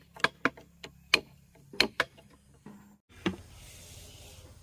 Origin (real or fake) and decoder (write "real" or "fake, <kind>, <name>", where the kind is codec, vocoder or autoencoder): real